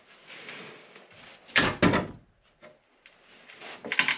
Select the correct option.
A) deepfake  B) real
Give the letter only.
B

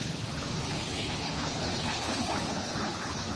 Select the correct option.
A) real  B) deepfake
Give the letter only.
B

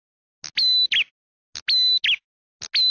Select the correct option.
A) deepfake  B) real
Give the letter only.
B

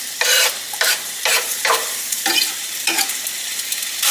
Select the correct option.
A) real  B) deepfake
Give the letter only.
B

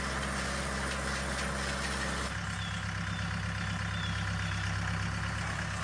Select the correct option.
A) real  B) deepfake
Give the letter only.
A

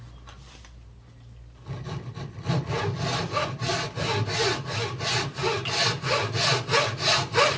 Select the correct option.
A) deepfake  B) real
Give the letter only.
B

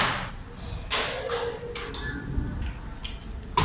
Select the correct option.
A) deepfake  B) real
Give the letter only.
B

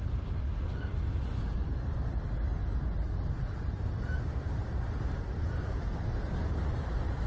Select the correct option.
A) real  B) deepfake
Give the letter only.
A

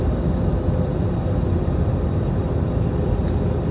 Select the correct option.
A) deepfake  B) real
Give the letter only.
B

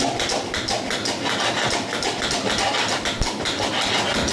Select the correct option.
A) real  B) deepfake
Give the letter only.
A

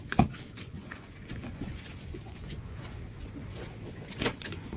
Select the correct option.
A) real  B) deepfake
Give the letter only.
B